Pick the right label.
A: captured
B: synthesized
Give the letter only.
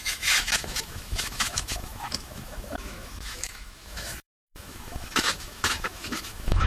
B